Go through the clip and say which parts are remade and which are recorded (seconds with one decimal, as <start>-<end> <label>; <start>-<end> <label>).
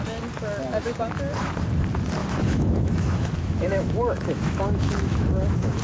0.0-2.2 recorded; 2.2-5.8 remade